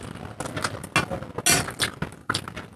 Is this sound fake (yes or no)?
no